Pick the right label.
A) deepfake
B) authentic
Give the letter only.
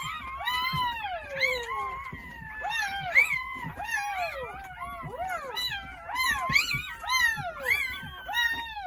B